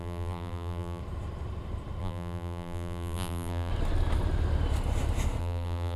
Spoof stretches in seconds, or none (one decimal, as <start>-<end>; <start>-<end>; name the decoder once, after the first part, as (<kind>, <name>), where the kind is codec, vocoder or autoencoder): 0.0-1.0 (vocoder, BigVGAN v2); 2.0-3.7; 5.4-6.0